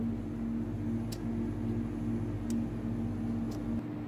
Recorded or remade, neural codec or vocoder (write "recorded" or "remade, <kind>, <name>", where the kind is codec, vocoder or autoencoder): recorded